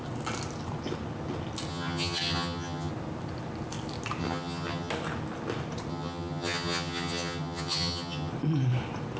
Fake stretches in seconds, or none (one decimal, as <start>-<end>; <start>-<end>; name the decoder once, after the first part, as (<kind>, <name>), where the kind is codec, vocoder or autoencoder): 1.7-2.9 (vocoder, HiFi-GAN); 4.2-4.9; 5.9-8.3